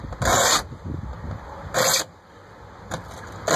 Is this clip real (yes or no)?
yes